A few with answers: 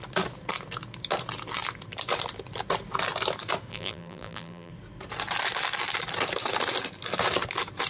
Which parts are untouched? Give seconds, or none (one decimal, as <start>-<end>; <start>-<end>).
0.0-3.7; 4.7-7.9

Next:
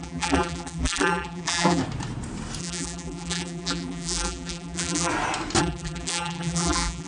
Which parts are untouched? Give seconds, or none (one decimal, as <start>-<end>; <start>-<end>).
1.8-2.6; 5.1-5.6

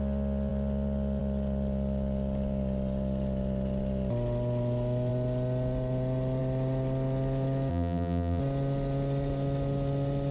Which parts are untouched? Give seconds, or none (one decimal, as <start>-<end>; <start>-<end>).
0.0-7.7; 8.4-10.3